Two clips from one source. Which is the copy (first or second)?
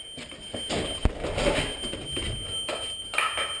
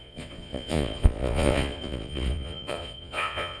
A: second